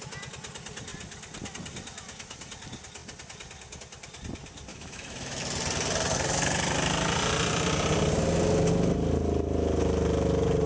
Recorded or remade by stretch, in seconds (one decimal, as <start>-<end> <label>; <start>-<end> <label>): 0.0-4.7 recorded; 4.7-5.4 remade; 5.4-10.7 recorded